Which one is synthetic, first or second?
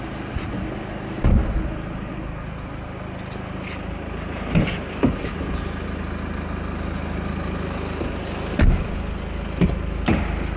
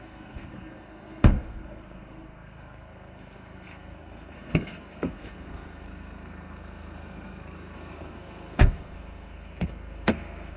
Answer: second